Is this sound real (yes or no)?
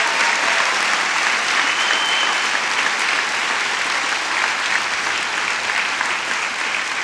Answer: yes